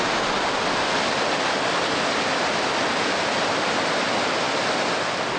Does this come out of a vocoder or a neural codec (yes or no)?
no